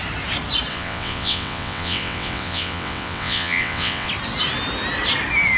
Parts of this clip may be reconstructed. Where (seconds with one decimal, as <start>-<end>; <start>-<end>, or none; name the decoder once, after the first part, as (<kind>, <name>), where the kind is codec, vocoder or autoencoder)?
0.7-4.1 (vocoder, WaveNeXt)